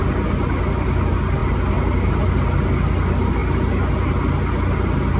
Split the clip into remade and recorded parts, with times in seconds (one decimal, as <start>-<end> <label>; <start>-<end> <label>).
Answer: 0.0-5.2 recorded